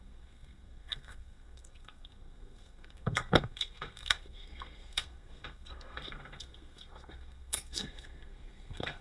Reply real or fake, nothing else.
fake